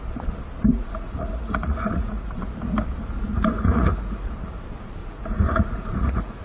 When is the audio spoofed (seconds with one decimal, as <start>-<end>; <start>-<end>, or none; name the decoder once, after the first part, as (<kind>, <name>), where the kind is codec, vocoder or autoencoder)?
0.7-2.5 (vocoder, Vocos); 3.3-4.3; 5.0-6.4